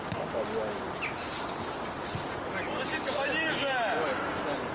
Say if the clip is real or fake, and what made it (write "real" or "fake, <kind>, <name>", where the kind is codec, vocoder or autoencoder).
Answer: real